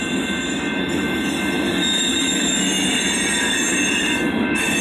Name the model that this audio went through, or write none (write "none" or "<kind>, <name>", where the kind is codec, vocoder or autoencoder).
none